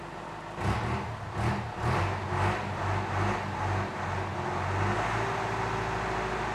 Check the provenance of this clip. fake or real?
real